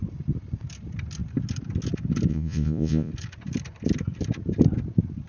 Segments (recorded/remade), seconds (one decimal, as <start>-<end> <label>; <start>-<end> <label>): 0.0-2.3 recorded; 2.3-3.1 remade; 3.1-5.3 recorded